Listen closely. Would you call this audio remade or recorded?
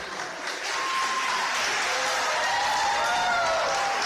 recorded